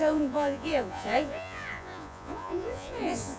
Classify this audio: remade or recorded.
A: remade